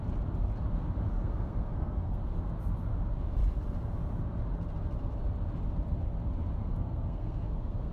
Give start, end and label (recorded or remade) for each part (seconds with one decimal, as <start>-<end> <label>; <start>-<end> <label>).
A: 0.0-1.2 recorded; 1.2-2.2 remade; 2.2-6.6 recorded; 6.6-7.9 remade